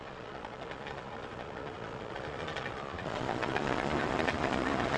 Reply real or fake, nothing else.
fake